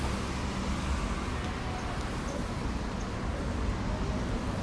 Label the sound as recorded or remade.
recorded